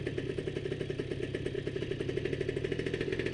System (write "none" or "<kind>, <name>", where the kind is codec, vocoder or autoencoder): none